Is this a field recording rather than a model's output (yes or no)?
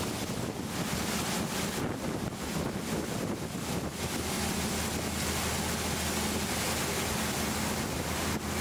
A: yes